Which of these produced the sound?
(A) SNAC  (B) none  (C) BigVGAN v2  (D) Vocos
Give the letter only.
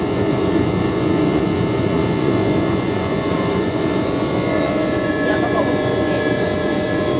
D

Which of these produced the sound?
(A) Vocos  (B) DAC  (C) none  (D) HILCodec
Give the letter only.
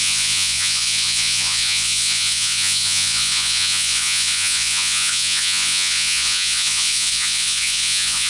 A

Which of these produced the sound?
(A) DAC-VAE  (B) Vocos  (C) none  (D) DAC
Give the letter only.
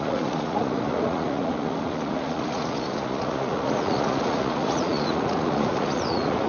B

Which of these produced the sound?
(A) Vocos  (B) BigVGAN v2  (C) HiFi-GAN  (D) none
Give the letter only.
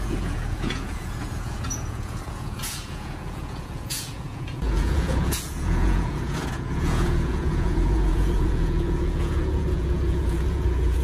A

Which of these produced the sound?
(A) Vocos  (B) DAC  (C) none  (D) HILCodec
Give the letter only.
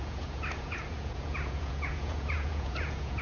A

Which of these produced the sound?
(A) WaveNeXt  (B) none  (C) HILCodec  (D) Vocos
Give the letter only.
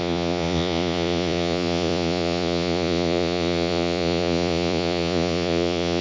D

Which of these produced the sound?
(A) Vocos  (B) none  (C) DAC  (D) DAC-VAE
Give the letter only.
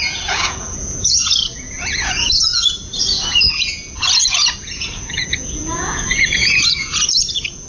A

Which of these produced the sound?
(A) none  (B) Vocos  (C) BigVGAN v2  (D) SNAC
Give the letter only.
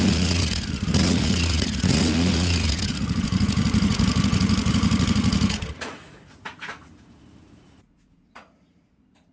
B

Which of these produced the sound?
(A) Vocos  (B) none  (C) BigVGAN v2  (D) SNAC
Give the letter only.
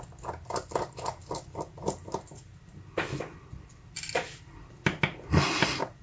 B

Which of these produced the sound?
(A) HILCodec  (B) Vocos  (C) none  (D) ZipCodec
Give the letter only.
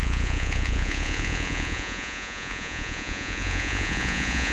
B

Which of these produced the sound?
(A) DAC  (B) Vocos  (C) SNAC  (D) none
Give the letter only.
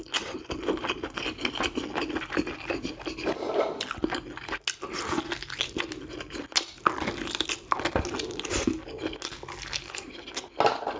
D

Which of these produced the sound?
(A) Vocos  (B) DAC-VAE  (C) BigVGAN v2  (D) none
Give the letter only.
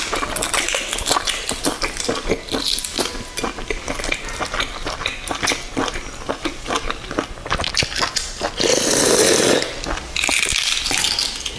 D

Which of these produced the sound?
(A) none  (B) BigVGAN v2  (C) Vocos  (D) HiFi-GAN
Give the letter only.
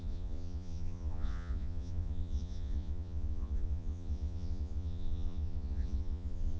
C